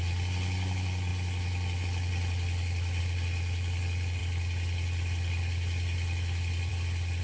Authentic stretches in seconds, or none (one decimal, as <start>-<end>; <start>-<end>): 0.0-7.2